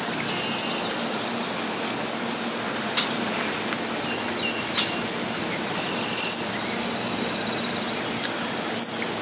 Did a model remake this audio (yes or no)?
no